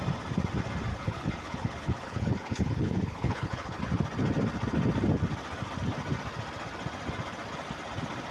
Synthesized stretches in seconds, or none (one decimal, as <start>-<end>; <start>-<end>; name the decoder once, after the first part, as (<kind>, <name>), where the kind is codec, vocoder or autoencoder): 0.9-3.8 (codec, HILCodec)